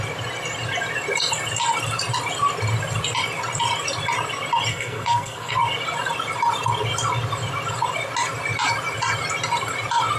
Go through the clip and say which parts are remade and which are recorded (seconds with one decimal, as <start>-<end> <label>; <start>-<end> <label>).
0.0-4.7 recorded; 4.7-5.5 remade; 5.5-10.2 recorded